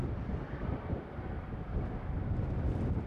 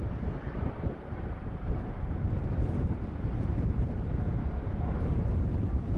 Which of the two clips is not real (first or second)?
second